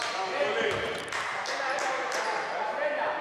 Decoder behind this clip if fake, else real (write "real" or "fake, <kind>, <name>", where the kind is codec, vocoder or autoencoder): real